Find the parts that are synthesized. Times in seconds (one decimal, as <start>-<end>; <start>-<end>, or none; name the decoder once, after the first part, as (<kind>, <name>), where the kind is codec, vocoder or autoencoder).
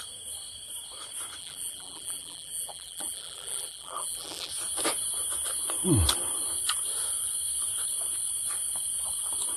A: 1.4-4.5 (vocoder, BigVGAN v2)